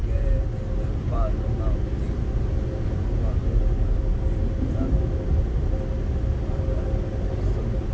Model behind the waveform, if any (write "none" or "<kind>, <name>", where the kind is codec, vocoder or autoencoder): none